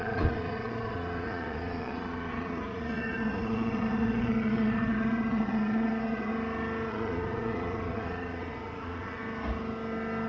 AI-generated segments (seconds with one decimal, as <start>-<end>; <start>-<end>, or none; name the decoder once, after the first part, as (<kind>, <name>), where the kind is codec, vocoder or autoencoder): 0.0-6.3 (vocoder, Vocos); 6.9-9.2